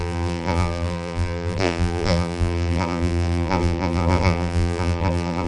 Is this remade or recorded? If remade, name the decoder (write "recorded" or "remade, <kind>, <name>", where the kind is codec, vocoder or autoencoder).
remade, vocoder, BigVGAN v2